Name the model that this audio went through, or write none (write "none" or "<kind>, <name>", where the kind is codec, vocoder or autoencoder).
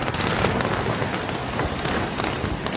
none